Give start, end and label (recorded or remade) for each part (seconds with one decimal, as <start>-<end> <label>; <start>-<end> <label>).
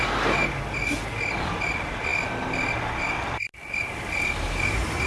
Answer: 0.0-5.1 recorded